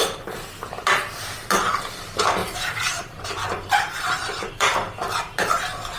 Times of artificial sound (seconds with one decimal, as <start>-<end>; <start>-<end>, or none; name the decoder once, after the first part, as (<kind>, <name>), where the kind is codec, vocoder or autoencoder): 2.4-5.1 (vocoder, BigVGAN v2)